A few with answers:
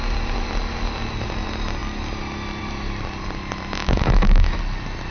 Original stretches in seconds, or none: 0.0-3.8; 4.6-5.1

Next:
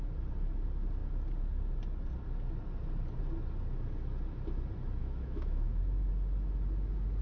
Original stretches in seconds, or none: 0.0-5.0; 6.1-7.2

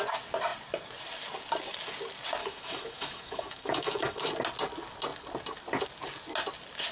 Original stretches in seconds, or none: 0.0-2.4; 4.3-6.9